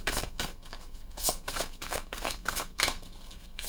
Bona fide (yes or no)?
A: no